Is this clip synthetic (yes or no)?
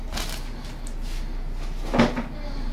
no